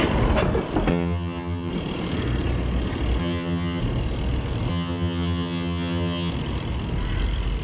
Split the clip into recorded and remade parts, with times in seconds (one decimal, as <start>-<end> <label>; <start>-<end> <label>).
0.0-0.9 recorded; 0.9-1.7 remade; 1.7-3.2 recorded; 3.2-3.8 remade; 3.8-4.7 recorded; 4.7-6.3 remade; 6.3-7.6 recorded